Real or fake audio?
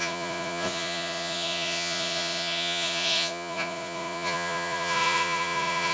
fake